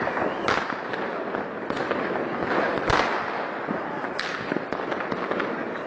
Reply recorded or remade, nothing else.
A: recorded